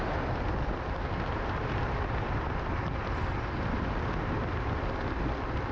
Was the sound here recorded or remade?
recorded